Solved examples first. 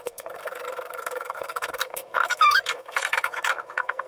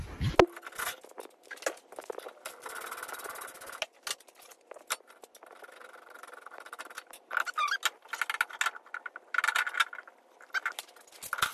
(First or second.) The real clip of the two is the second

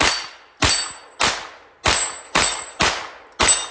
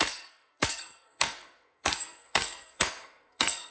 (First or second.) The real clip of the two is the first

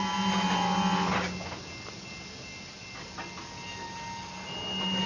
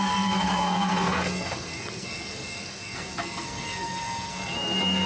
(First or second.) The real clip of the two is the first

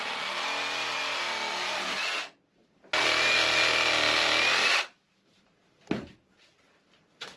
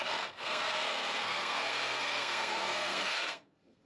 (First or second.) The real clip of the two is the first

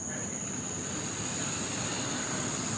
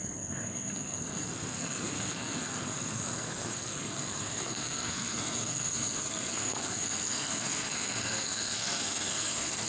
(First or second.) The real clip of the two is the first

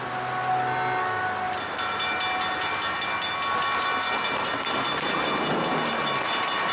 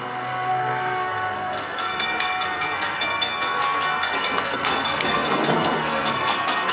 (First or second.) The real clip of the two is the first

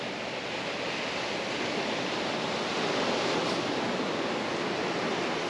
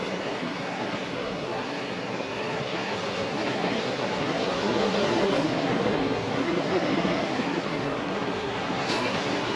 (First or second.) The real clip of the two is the first